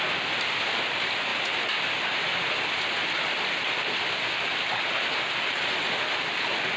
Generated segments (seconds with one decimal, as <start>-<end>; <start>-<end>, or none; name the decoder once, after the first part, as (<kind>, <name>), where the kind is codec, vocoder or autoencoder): none